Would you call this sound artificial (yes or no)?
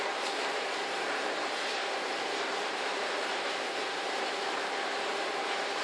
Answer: yes